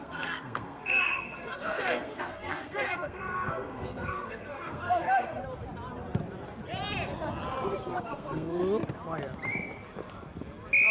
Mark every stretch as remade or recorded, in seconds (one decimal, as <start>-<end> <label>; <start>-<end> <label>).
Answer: 0.0-5.4 remade; 5.4-8.0 recorded; 8.0-8.6 remade; 8.6-10.9 recorded

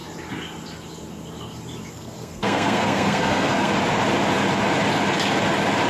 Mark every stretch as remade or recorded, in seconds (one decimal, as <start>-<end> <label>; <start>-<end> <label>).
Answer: 0.0-1.9 recorded; 1.9-3.7 remade; 3.7-5.9 recorded

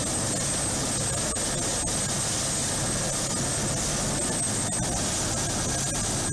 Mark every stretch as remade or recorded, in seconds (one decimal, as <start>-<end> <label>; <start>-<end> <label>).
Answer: 0.0-6.3 recorded

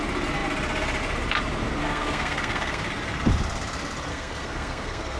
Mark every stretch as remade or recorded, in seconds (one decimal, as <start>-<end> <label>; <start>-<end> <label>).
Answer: 0.0-1.8 recorded; 1.8-2.8 remade; 2.8-4.1 recorded; 4.1-5.2 remade